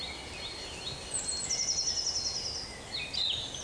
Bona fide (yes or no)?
yes